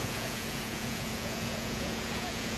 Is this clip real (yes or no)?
no